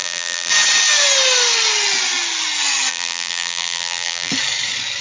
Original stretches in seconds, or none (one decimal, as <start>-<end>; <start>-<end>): 0.5-2.9; 4.3-5.0